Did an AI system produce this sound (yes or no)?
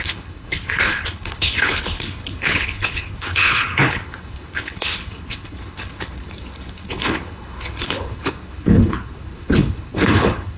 yes